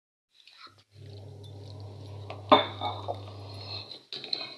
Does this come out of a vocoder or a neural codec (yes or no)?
no